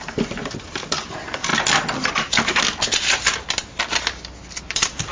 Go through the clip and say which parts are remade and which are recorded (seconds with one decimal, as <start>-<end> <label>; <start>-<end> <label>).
0.0-1.5 remade; 1.5-4.6 recorded; 4.6-5.1 remade